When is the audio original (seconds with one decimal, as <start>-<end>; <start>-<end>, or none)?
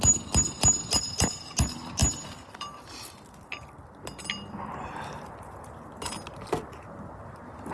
0.0-7.7